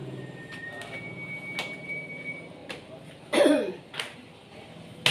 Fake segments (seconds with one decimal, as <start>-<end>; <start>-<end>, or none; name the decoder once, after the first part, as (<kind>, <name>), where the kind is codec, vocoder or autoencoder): 2.6-3.8 (vocoder, BigVGAN v2)